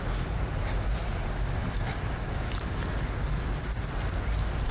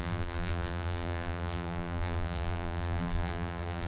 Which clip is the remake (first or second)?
second